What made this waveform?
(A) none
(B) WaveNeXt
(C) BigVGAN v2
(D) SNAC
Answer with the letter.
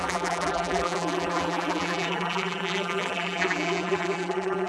C